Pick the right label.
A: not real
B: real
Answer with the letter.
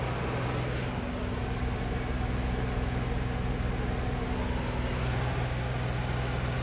B